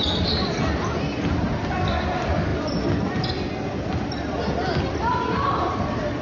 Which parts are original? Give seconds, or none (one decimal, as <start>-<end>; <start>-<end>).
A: 0.0-6.2